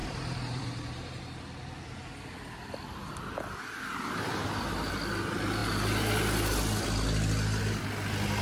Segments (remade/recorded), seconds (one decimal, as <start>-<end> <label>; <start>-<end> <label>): 0.0-1.4 remade; 1.4-8.4 recorded